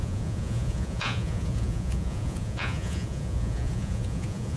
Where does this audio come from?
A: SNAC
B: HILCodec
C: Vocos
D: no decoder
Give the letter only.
C